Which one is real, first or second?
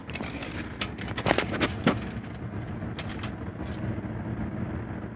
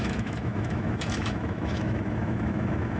first